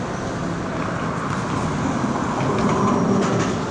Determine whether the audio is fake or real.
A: real